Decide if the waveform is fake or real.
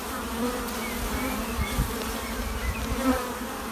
real